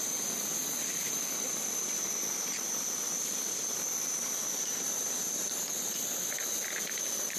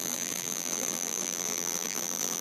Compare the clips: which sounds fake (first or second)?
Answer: second